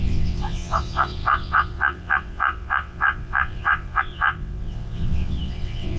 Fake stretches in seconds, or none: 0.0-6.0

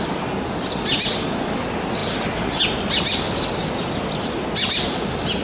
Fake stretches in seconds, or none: none

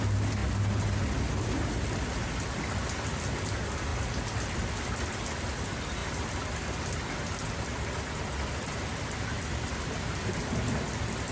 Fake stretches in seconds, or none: none

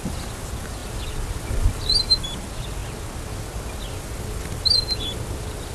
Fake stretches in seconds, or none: none

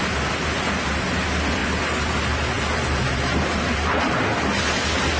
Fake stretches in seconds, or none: none

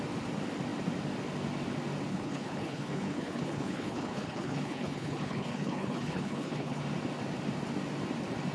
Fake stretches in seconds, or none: 2.1-6.8

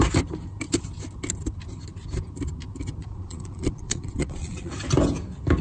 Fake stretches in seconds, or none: 3.0-4.7

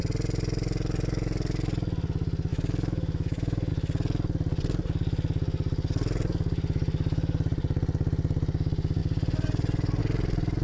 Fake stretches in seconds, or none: 2.5-3.7